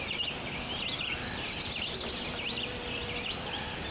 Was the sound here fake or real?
real